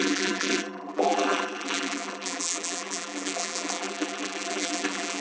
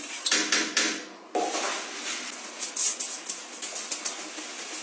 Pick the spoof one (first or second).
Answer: first